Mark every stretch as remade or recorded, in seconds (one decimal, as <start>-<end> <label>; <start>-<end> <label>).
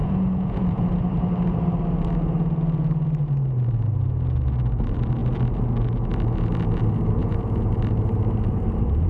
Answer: 0.0-0.9 remade; 0.9-7.2 recorded; 7.2-7.7 remade; 7.7-9.1 recorded